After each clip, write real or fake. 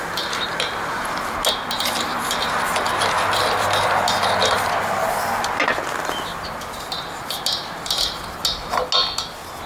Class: real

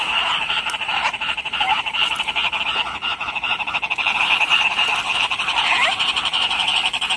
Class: fake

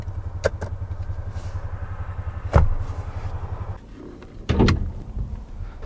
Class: real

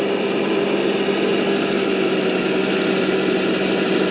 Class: real